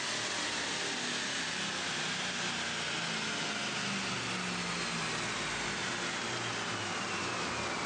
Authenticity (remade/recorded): recorded